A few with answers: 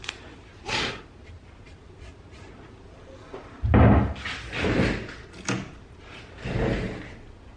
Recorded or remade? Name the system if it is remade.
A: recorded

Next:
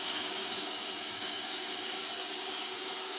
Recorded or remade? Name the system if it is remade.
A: remade, codec, DAC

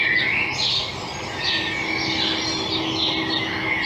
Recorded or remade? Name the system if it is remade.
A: recorded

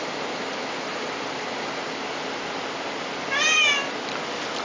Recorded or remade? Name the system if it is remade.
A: recorded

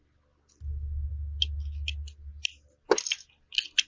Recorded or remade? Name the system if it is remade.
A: recorded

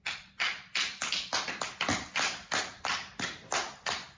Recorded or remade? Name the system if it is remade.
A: recorded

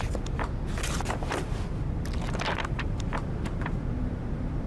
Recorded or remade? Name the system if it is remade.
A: remade, vocoder, BigVGAN v2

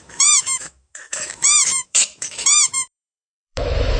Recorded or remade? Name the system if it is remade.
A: remade, autoencoder, DAC-VAE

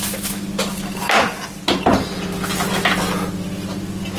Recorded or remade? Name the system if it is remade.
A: recorded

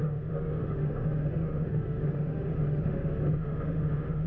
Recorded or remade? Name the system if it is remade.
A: remade, autoencoder, DAC-VAE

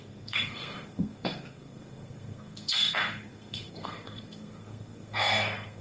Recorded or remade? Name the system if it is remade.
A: remade, codec, SNAC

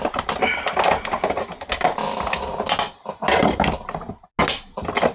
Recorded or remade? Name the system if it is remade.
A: recorded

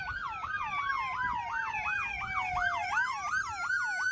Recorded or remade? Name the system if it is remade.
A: recorded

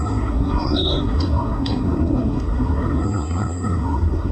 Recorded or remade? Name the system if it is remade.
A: remade, codec, SNAC